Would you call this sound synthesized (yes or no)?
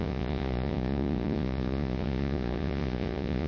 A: yes